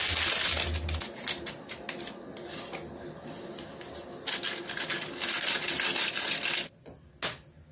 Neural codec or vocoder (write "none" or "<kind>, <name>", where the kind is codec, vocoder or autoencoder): none